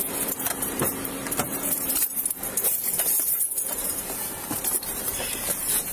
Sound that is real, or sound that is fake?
fake